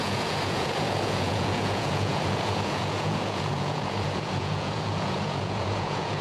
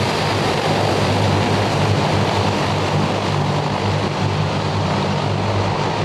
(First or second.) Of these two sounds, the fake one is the first